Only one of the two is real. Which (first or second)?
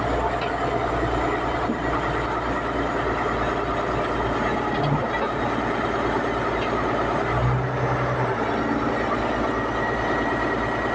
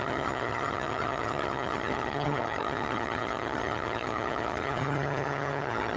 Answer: first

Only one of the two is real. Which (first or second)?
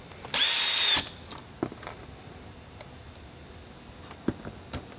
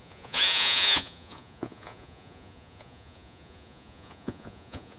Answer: first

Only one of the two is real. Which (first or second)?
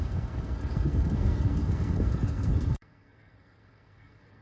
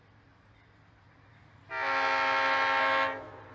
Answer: second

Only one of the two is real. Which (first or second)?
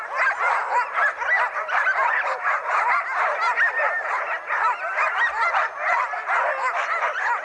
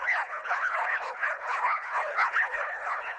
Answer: first